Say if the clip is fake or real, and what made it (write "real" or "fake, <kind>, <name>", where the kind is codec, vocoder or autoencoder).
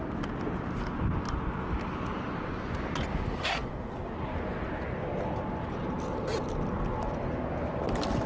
real